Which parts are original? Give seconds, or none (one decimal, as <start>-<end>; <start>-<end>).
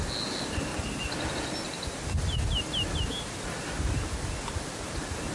0.0-5.3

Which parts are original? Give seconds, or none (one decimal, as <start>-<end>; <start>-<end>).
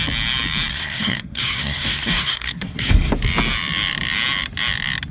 0.0-0.7; 3.1-5.1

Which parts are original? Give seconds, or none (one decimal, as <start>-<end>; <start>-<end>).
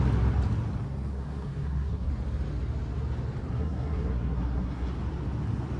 0.0-1.1; 2.1-3.5; 4.9-5.8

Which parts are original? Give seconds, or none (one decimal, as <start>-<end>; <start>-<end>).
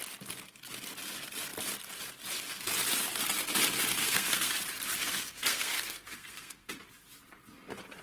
0.0-4.0; 4.5-5.0; 6.7-8.0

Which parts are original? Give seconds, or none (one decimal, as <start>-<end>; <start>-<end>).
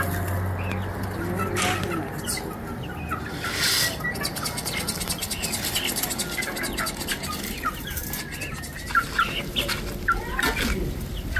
0.0-11.4